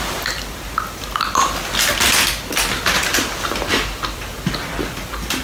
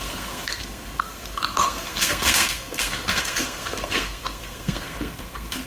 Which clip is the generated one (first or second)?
second